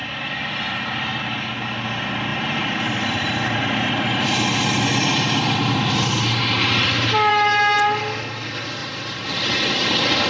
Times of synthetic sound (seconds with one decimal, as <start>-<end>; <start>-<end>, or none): 0.0-1.2; 2.3-7.3; 8.8-10.3